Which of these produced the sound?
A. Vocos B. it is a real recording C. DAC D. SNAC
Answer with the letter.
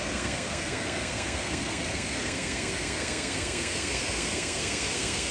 D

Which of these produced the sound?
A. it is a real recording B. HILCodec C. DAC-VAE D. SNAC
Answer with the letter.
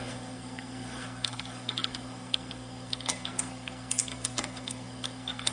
D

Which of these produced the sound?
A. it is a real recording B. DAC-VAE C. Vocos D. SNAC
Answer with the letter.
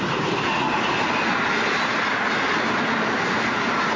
A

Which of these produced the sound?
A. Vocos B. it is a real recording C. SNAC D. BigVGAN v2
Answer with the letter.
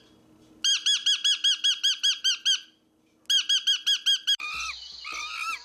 B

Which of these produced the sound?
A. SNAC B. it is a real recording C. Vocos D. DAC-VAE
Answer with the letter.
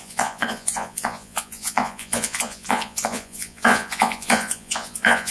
C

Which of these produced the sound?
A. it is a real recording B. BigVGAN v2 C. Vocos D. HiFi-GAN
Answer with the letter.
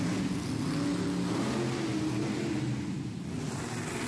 A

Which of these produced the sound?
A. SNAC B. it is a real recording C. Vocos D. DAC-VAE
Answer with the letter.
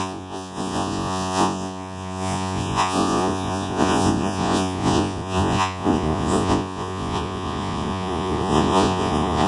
C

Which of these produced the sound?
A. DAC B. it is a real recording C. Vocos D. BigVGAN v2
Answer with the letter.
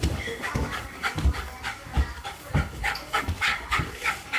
A